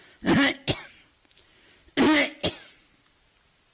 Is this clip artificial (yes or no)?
no